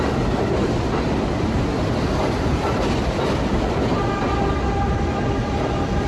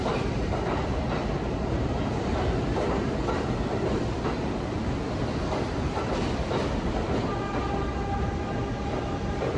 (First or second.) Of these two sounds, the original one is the second